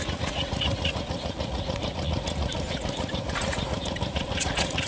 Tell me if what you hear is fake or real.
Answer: fake